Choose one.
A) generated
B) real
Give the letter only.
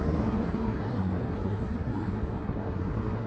A